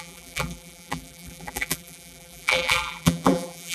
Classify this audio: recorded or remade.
remade